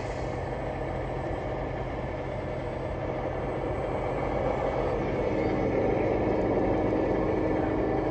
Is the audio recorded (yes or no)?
yes